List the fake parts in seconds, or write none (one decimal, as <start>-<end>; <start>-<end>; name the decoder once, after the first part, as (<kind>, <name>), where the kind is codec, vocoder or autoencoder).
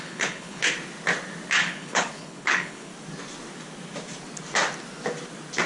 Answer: 0.0-0.6 (codec, HILCodec); 1.6-2.9